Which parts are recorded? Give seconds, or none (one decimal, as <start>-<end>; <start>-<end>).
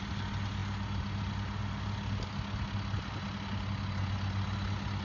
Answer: 0.0-5.0